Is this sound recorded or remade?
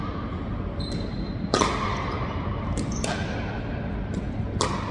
recorded